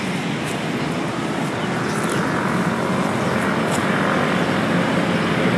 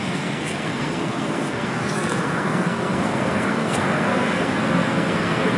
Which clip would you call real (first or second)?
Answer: first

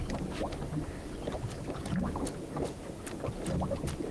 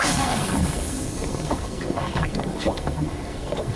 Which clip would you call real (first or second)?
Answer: first